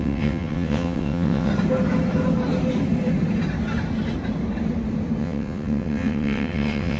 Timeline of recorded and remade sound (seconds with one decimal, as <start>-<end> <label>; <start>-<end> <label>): 0.0-1.5 remade; 1.5-5.2 recorded; 5.2-7.0 remade